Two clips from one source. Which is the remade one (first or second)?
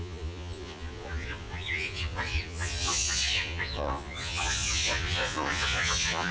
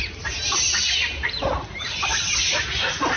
first